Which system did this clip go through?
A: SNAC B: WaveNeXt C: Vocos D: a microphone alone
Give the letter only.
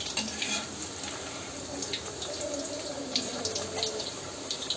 D